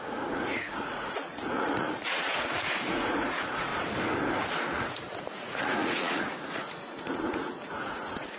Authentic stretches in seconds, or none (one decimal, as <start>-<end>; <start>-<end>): 3.7-4.4